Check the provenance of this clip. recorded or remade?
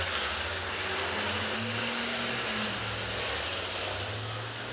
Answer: recorded